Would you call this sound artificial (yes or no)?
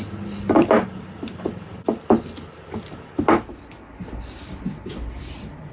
no